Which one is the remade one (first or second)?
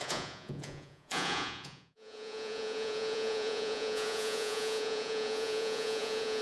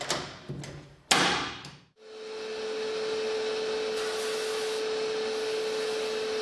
first